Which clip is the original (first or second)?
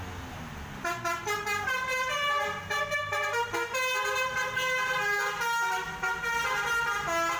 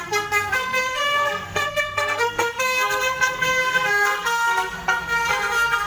first